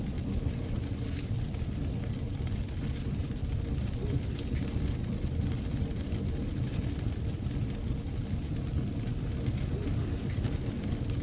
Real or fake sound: real